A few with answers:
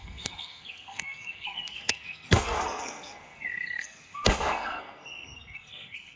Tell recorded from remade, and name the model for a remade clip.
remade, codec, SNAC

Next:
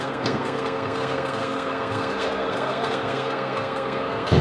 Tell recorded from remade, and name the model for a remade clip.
remade, codec, SNAC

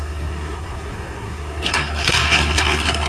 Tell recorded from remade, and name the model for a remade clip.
remade, codec, SNAC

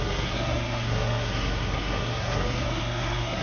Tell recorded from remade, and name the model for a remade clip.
remade, codec, SNAC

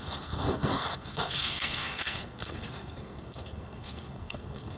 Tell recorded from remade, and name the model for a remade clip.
remade, codec, SNAC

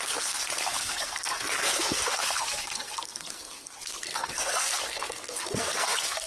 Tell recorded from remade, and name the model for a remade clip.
remade, codec, SNAC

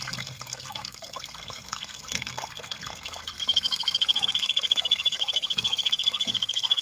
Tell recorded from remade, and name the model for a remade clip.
remade, codec, SNAC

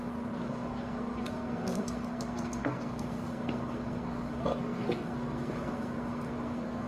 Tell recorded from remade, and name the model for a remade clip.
remade, codec, SNAC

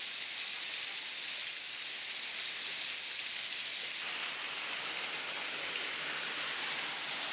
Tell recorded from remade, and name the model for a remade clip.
recorded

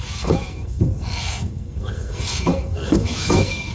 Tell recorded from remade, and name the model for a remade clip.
remade, codec, SNAC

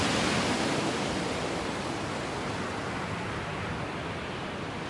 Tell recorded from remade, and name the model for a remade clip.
recorded